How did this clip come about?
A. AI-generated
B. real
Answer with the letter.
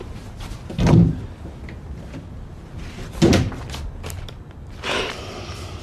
B